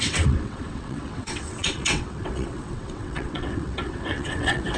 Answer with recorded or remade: remade